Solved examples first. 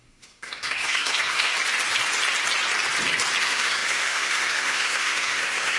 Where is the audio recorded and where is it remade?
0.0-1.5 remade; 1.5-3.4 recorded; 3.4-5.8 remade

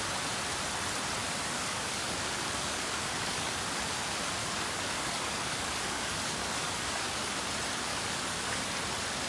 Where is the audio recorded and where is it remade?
0.0-1.2 recorded; 1.2-3.5 remade; 3.5-4.4 recorded; 4.4-7.3 remade; 7.3-7.9 recorded; 7.9-8.6 remade; 8.6-9.3 recorded

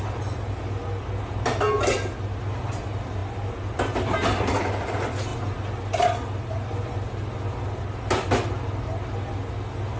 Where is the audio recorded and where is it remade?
0.0-10.0 recorded

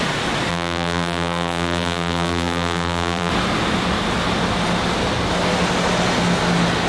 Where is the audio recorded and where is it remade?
0.0-0.5 recorded; 0.5-3.3 remade; 3.3-6.9 recorded

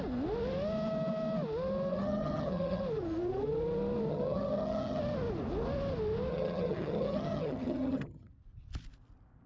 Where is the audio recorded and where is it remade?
0.0-1.9 recorded; 1.9-2.8 remade; 2.8-4.1 recorded; 4.1-5.0 remade; 5.0-6.3 recorded; 6.3-8.3 remade; 8.3-9.5 recorded